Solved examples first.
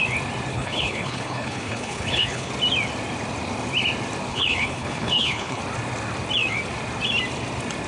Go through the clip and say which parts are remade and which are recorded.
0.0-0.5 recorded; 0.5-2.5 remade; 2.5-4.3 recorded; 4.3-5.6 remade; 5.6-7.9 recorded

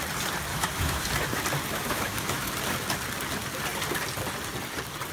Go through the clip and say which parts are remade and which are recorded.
0.0-0.5 recorded; 0.5-1.1 remade; 1.1-1.7 recorded; 1.7-2.5 remade; 2.5-5.1 recorded

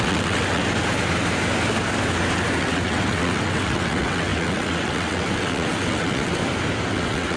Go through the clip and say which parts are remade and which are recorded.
0.0-0.6 remade; 0.6-2.6 recorded; 2.6-6.4 remade; 6.4-6.9 recorded; 6.9-7.4 remade

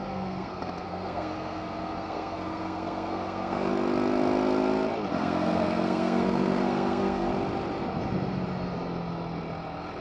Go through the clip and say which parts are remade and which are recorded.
0.0-3.7 remade; 3.7-5.1 recorded; 5.1-7.3 remade; 7.3-10.0 recorded

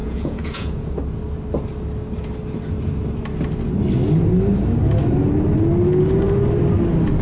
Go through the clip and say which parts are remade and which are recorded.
0.0-1.0 remade; 1.0-7.2 recorded